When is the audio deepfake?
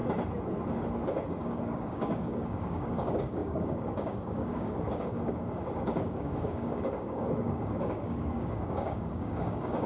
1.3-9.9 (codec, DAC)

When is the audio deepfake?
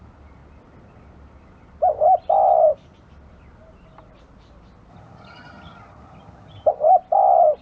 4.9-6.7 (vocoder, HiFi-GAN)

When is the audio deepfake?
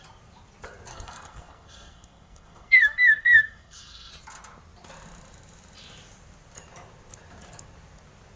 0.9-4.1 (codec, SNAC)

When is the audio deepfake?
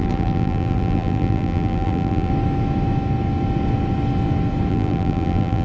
0.0-2.3 (vocoder, BigVGAN v2); 4.7-5.6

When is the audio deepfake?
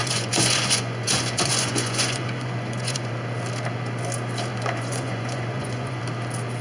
0.0-3.1 (vocoder, Vocos); 4.5-6.0